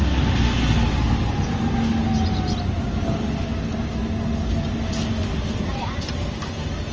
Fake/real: real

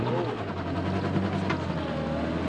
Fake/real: real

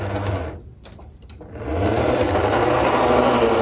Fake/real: real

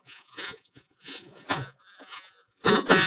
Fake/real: fake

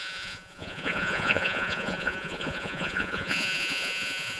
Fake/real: fake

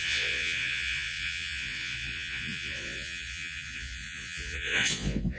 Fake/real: fake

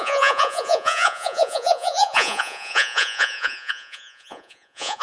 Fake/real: fake